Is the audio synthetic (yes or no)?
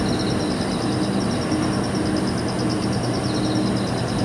no